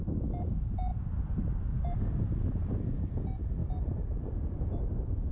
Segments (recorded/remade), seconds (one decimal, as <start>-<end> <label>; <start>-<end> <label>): 0.0-5.3 recorded